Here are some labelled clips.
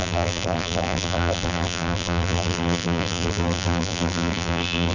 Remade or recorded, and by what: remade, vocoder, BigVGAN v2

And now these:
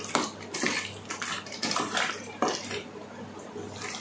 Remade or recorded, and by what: remade, vocoder, BigVGAN v2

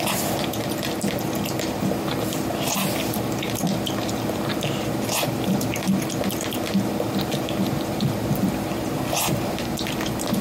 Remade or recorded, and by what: recorded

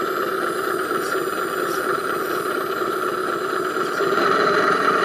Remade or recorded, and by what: remade, vocoder, BigVGAN v2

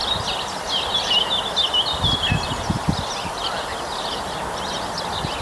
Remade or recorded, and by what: recorded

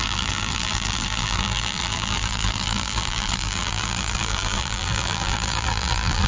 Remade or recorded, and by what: remade, vocoder, BigVGAN v2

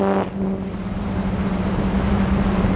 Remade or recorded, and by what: recorded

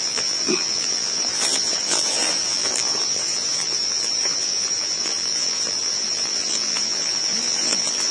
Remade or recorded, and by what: remade, vocoder, BigVGAN v2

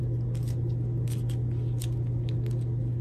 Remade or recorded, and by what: recorded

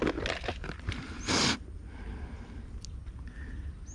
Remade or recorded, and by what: recorded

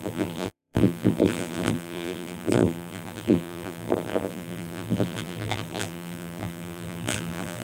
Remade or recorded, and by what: remade, vocoder, BigVGAN v2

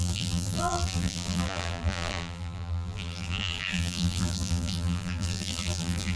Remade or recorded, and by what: remade, vocoder, BigVGAN v2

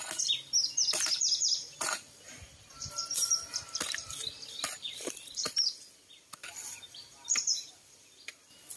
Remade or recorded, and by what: remade, vocoder, BigVGAN v2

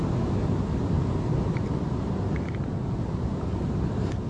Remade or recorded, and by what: recorded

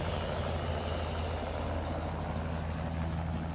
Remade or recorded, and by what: recorded